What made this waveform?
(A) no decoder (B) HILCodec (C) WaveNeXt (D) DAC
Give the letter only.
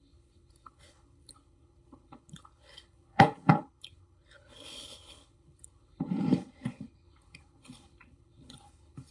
B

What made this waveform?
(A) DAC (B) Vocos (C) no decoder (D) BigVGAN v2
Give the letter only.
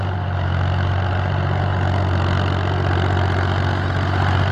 C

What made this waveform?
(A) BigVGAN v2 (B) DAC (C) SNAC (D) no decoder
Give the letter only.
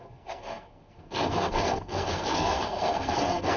C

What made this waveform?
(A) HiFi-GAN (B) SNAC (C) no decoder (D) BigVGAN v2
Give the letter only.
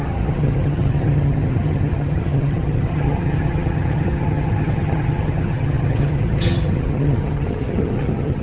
A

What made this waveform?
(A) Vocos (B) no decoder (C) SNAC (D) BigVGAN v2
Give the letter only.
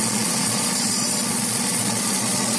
A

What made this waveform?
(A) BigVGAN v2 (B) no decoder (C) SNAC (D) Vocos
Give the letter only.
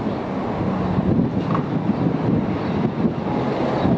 B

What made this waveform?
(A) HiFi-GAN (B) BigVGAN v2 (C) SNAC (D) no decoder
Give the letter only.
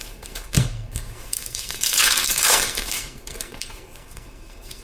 C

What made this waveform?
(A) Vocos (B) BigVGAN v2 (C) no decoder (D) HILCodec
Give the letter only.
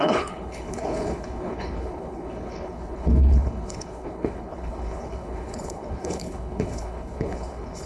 D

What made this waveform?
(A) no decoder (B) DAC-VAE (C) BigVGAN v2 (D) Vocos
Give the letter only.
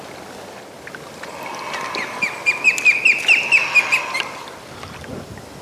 A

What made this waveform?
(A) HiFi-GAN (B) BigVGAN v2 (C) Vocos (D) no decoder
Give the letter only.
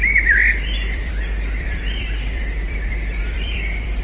B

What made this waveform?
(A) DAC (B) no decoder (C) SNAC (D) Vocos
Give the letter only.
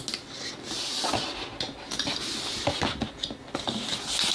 B